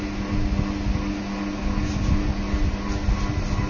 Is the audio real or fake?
real